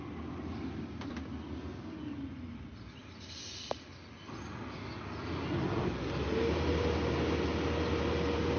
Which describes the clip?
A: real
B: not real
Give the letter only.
A